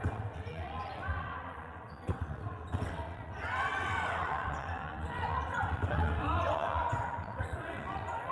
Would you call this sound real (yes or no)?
no